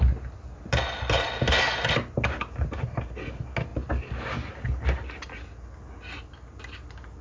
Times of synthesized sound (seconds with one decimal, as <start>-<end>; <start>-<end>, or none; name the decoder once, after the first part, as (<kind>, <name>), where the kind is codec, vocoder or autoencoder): none